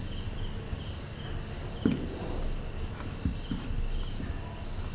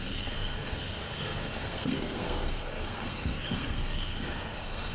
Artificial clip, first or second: second